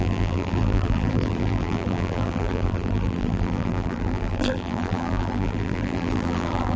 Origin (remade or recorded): remade